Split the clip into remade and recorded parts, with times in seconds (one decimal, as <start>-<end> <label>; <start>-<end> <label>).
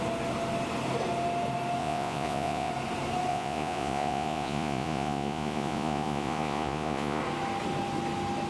0.0-1.8 recorded; 1.8-2.7 remade; 2.7-3.3 recorded; 3.3-7.2 remade; 7.2-8.5 recorded